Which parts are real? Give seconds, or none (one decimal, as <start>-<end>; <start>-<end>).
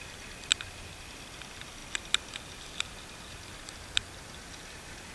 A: 0.0-5.1